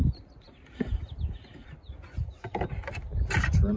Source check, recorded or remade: recorded